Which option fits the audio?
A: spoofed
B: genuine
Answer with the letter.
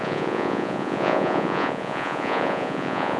A